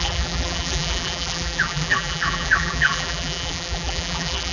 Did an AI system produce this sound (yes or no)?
yes